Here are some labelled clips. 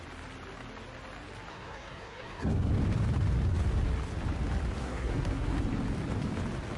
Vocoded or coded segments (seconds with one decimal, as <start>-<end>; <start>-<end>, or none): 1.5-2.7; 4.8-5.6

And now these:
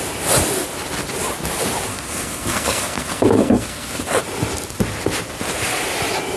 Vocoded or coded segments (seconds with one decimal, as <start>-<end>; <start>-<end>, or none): 1.9-4.2

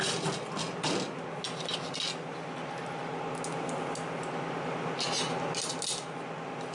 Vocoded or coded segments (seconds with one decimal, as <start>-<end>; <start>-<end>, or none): none

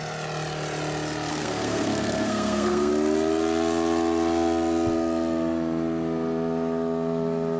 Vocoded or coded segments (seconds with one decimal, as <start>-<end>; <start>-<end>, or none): 1.3-2.9